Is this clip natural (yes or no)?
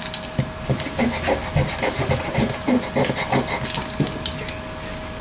yes